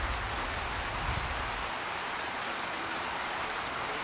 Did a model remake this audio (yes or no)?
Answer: no